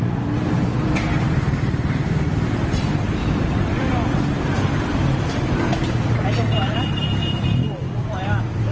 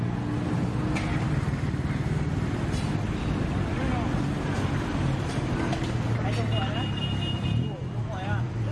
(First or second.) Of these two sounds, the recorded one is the second